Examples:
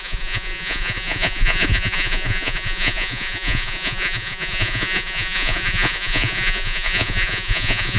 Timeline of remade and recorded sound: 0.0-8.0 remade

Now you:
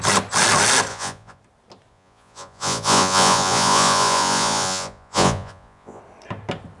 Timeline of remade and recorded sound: 0.0-0.9 recorded; 0.9-1.4 remade; 1.4-1.9 recorded; 1.9-6.0 remade; 6.0-6.8 recorded

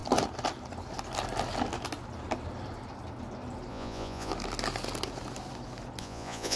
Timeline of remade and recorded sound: 0.0-3.7 recorded; 3.7-4.3 remade; 4.3-6.0 recorded; 6.0-6.6 remade

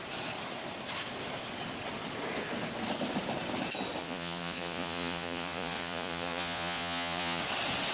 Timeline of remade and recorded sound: 0.0-4.0 recorded; 4.0-7.4 remade; 7.4-7.9 recorded

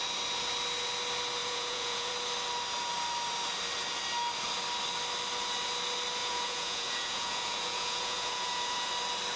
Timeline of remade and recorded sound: 0.0-1.4 recorded; 1.4-2.1 remade; 2.1-6.2 recorded; 6.2-8.9 remade; 8.9-9.4 recorded

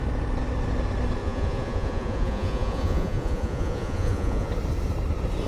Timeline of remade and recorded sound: 0.0-1.2 recorded; 1.2-4.5 remade; 4.5-5.5 recorded

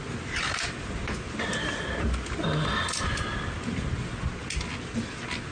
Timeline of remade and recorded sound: 0.0-5.5 recorded

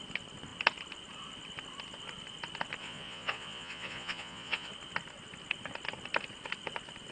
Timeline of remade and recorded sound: 0.0-2.8 recorded; 2.8-4.7 remade; 4.7-7.1 recorded